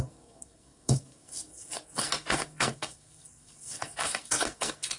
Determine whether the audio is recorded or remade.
remade